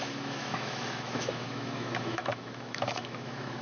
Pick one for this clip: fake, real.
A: fake